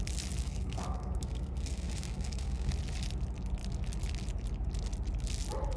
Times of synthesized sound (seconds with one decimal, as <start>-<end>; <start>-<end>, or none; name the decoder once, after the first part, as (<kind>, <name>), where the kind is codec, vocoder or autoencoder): 0.4-2.7 (codec, SNAC)